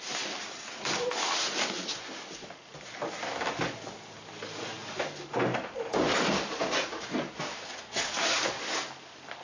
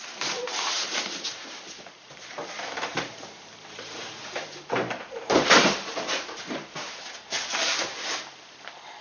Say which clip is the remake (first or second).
second